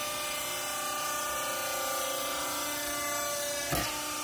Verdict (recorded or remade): recorded